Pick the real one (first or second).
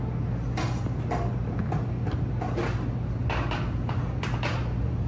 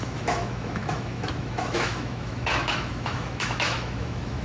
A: first